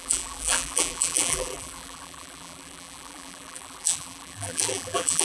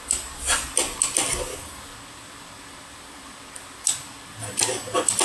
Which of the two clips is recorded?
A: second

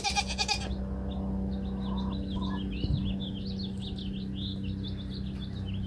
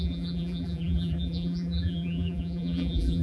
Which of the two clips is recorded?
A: first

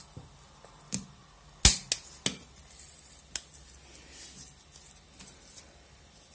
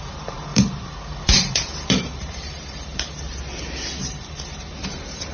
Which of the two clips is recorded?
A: first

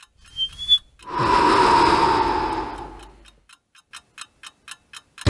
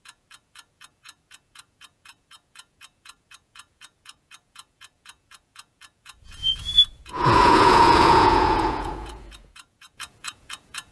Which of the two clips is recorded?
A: first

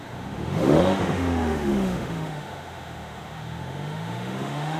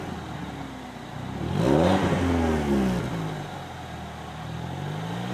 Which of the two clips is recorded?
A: second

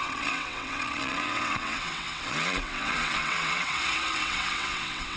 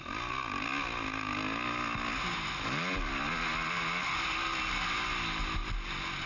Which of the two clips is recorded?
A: second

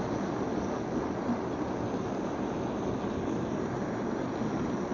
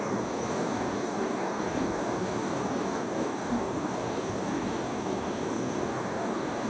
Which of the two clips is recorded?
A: first